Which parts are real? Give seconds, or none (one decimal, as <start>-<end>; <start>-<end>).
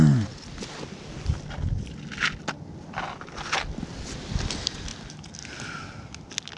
0.0-6.6